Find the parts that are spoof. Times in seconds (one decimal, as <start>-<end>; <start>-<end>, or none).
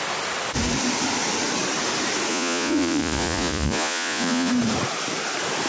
2.3-4.5